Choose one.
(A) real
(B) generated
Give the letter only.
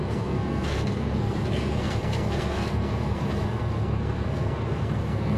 B